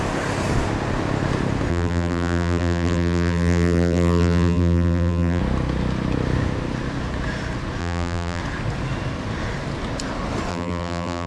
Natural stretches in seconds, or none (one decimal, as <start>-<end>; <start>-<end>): 0.0-1.7; 5.4-7.8; 8.4-10.5